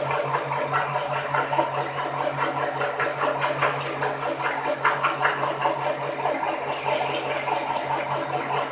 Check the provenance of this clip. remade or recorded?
recorded